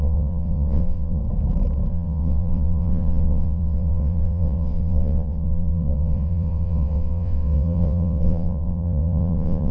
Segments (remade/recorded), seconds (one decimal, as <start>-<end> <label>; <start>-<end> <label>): 0.0-1.2 remade; 1.2-1.9 recorded; 1.9-9.7 remade